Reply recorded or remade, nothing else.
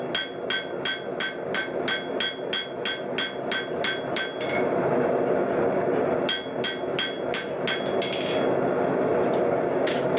recorded